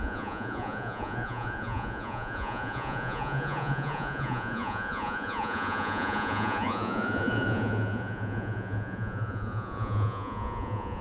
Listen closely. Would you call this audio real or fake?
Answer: fake